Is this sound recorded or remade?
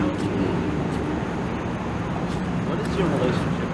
recorded